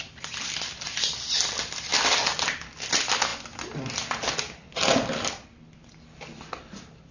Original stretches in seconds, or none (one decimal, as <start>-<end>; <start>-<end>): 0.0-7.1

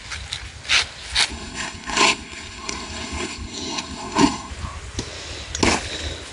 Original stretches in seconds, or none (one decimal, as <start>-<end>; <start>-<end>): 0.0-1.3; 4.5-6.3

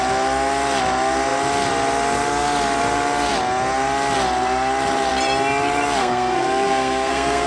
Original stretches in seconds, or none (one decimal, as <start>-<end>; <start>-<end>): 0.0-6.0

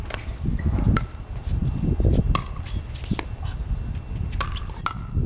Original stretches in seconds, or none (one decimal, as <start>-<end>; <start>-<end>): 0.0-5.3

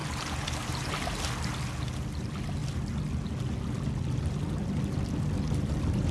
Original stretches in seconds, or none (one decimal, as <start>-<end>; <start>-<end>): 0.9-6.1

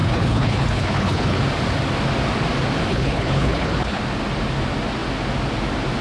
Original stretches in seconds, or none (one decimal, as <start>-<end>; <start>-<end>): 1.4-2.9; 4.0-6.0